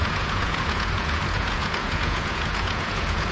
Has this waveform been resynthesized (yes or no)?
yes